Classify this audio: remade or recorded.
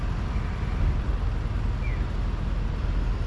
recorded